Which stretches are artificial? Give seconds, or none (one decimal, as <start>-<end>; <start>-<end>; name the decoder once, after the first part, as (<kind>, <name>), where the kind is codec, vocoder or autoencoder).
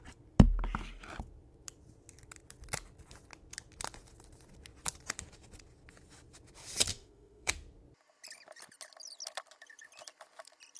6.9-7.5 (autoencoder, DAC-VAE)